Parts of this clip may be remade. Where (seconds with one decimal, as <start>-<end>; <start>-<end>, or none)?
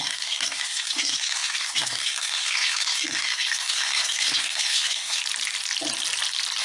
0.0-5.2